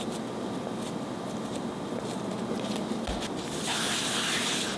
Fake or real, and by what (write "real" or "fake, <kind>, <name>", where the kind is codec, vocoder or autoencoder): real